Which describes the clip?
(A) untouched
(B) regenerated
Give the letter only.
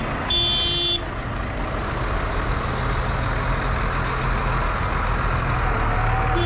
A